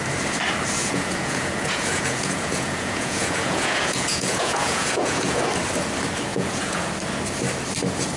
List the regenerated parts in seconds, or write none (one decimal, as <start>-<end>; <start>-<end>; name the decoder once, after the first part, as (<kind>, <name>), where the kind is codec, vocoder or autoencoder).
0.8-5.4 (vocoder, Vocos); 6.3-6.9